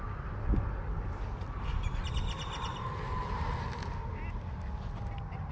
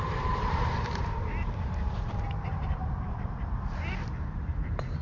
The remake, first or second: second